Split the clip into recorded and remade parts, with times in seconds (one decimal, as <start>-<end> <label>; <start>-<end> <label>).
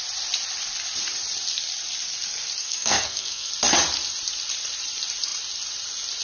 0.0-2.6 recorded; 2.6-3.5 remade; 3.5-6.2 recorded